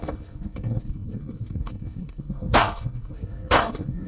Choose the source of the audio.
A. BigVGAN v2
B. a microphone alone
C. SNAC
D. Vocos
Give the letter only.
C